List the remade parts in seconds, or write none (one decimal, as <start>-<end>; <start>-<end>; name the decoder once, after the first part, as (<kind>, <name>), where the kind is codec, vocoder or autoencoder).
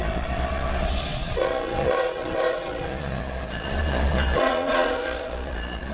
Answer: 0.0-5.9 (vocoder, Vocos)